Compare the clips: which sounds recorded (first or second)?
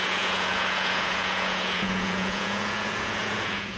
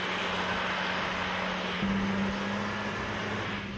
second